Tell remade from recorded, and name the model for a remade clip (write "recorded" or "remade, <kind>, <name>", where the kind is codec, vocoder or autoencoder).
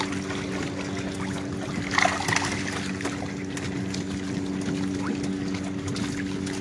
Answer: recorded